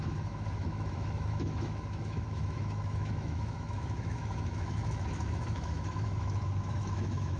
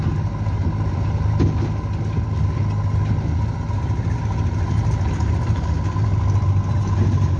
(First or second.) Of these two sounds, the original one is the second